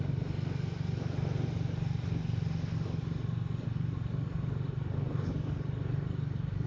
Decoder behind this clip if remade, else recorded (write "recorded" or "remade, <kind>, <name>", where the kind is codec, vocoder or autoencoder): recorded